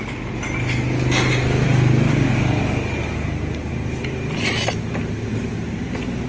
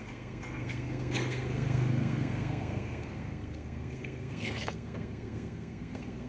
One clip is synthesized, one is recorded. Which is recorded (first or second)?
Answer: first